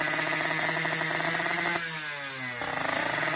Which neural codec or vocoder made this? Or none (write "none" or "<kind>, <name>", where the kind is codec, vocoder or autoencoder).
none